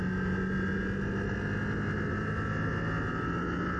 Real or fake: real